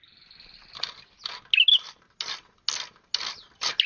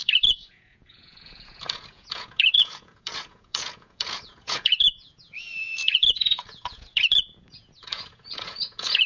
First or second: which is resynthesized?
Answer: second